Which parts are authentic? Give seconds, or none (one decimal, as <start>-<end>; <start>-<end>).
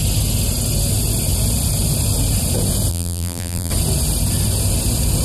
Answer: 0.0-2.9; 3.7-5.2